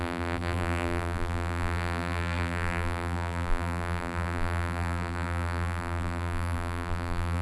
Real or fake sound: fake